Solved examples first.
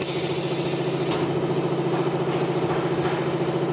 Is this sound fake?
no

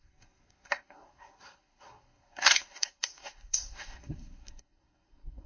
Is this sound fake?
yes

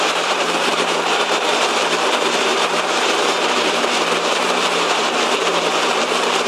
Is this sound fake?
yes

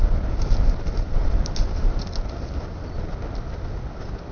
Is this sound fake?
no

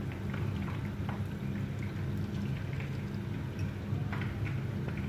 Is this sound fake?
no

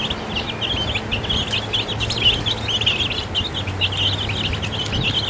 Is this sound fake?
no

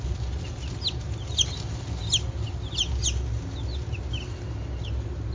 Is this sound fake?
no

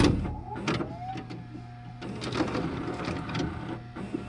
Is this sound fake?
no